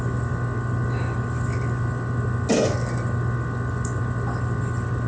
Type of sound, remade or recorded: recorded